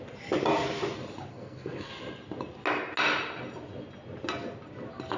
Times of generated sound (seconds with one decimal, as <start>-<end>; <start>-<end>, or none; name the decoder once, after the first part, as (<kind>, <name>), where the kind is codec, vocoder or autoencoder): 1.3-1.9 (codec, SNAC)